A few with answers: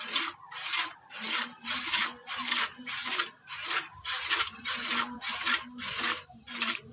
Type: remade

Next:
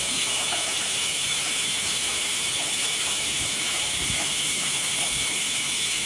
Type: remade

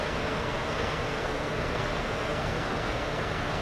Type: remade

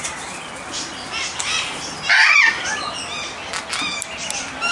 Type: recorded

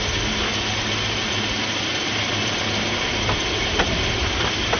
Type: recorded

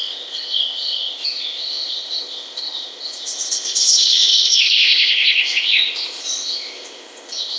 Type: remade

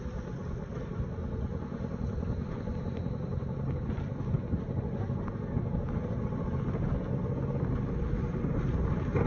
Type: recorded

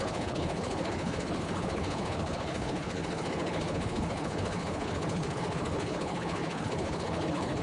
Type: remade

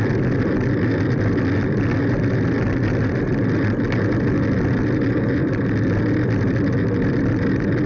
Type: recorded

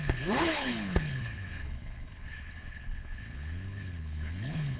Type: remade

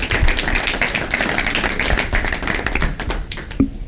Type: recorded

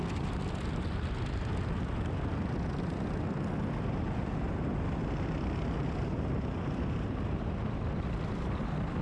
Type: recorded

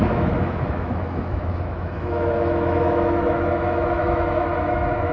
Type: remade